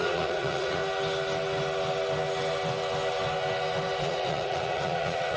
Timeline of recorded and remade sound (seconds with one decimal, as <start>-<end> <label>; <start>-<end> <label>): 0.0-0.8 remade; 0.8-4.0 recorded; 4.0-5.4 remade